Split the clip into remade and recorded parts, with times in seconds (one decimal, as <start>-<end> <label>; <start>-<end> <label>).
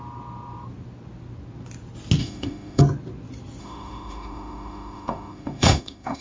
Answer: 0.0-2.2 recorded; 2.2-2.8 remade; 2.8-3.6 recorded; 3.6-6.2 remade